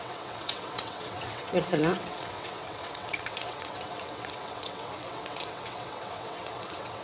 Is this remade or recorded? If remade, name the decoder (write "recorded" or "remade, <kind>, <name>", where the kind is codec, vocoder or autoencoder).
remade, vocoder, WaveNeXt